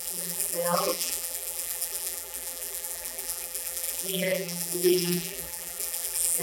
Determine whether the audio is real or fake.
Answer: fake